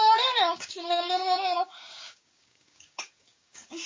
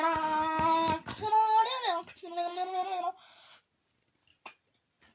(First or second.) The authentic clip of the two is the second